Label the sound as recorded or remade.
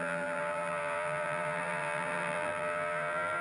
remade